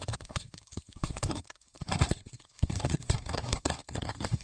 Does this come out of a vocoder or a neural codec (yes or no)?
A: yes